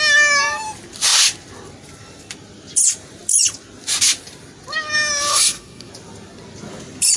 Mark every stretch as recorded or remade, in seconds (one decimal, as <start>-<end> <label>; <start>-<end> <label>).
0.0-5.3 recorded; 5.3-5.9 remade; 5.9-7.2 recorded